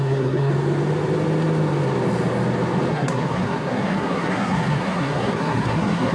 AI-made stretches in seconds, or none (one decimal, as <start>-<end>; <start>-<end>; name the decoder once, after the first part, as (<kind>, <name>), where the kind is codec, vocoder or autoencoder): 0.0-0.5 (codec, SNAC); 2.9-6.1